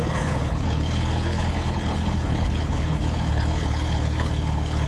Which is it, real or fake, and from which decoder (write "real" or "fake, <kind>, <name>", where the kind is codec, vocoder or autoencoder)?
fake, codec, HILCodec